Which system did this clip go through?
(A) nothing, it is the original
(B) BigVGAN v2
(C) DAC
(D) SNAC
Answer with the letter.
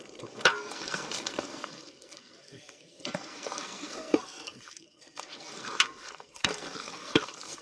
D